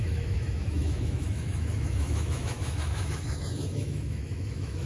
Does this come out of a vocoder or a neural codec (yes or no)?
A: yes